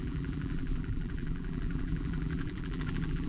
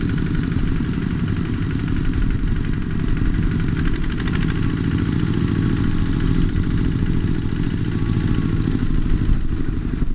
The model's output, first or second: first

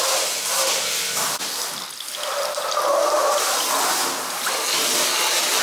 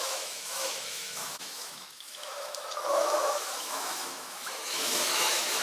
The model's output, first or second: second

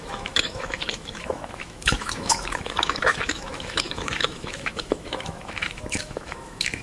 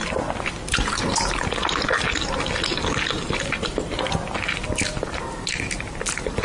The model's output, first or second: first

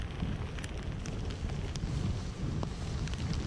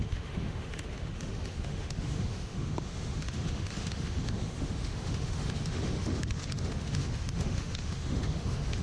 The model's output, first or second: second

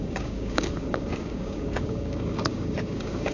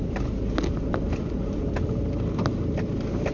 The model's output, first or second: first